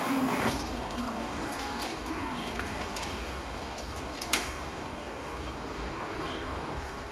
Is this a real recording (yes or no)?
no